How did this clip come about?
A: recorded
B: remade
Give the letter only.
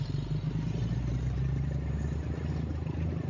A